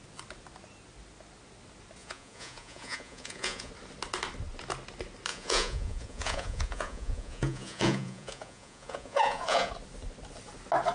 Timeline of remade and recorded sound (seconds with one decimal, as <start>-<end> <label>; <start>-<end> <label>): 0.0-2.0 recorded; 2.0-3.7 remade; 3.7-5.3 recorded; 5.3-9.7 remade; 9.7-10.9 recorded